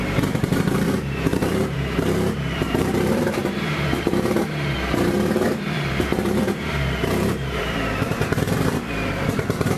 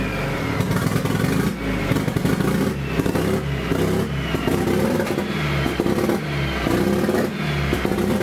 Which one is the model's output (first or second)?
first